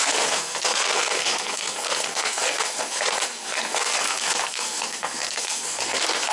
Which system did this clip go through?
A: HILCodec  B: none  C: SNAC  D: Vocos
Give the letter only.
C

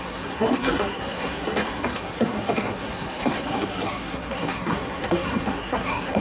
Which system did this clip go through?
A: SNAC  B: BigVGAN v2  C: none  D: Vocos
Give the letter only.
A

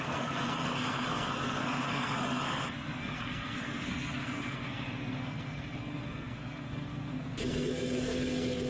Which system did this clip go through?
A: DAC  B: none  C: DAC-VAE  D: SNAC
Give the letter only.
D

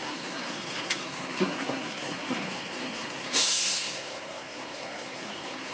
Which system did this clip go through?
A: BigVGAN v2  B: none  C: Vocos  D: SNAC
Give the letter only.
D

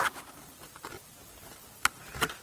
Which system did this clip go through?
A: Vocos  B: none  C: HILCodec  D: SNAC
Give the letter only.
B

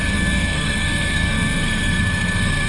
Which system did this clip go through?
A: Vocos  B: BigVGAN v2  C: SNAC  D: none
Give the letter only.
C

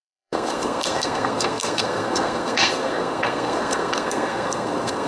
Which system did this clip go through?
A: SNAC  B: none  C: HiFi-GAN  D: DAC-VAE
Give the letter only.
A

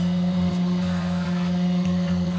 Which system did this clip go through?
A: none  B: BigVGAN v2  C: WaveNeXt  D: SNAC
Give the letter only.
D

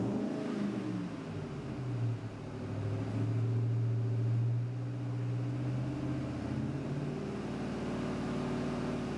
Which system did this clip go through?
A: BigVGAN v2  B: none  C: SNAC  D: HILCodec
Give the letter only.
B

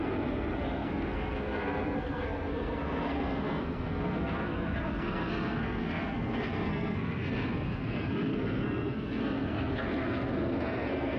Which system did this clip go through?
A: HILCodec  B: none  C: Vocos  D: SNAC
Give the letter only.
D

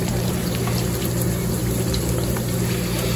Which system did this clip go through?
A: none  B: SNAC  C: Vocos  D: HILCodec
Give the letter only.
A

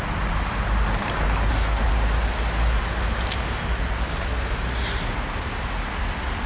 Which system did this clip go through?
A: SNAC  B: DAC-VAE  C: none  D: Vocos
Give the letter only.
C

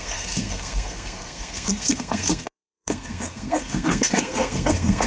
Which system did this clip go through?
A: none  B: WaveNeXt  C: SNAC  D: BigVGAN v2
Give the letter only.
C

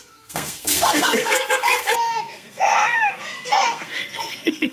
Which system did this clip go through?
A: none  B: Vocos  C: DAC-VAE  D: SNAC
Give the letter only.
D